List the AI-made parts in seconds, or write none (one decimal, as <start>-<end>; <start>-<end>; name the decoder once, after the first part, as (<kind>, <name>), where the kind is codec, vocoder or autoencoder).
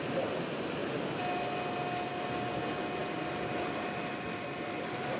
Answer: 3.0-5.2 (vocoder, BigVGAN v2)